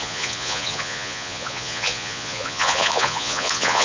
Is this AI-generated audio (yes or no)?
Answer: yes